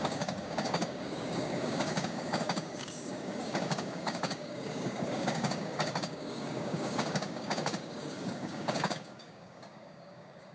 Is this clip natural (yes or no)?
no